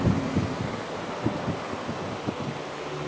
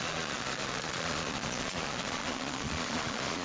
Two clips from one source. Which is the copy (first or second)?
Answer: second